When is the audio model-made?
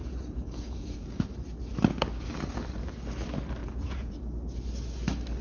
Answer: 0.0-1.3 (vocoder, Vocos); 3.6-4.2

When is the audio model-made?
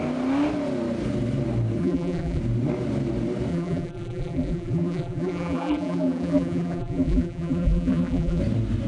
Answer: 1.8-2.4 (vocoder, BigVGAN v2); 3.5-8.4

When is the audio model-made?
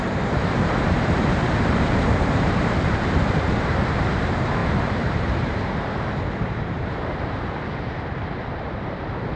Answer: 0.0-9.4 (vocoder, BigVGAN v2)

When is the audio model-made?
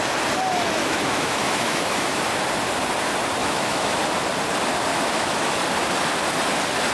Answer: 0.8-2.2 (autoencoder, DAC-VAE); 3.4-4.0; 4.9-5.6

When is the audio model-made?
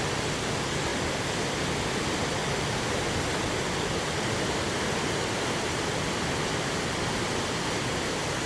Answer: 0.9-1.8 (vocoder, BigVGAN v2)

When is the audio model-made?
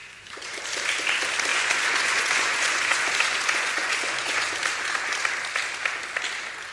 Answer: 0.0-0.6 (vocoder, Vocos); 1.5-4.5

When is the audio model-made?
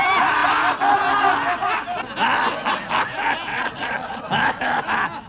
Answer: 3.5-4.2 (vocoder, Vocos)